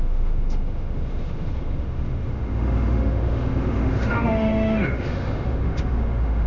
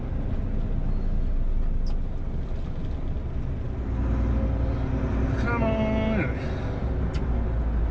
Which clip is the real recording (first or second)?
second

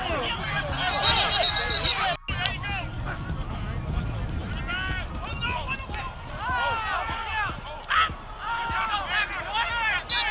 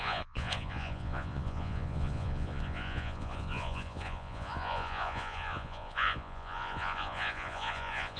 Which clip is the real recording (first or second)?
first